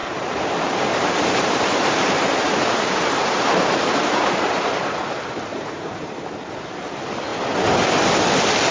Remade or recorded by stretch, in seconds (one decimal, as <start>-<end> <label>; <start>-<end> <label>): 0.0-4.7 remade; 4.7-5.5 recorded; 5.5-6.2 remade; 6.2-8.7 recorded